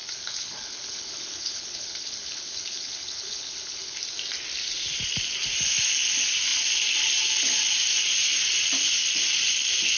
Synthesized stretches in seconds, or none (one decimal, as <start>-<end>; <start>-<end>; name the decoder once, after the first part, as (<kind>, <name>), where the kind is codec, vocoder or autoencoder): 0.0-4.0 (codec, HILCodec)